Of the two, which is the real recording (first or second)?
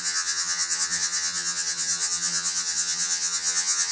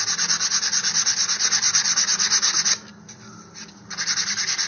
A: second